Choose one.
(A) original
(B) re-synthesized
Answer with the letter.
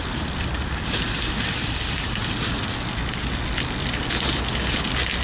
A